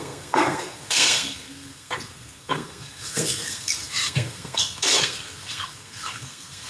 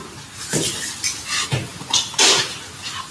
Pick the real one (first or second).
second